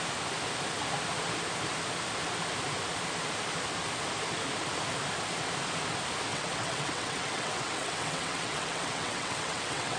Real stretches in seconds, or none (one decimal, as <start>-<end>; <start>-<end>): 0.0-6.3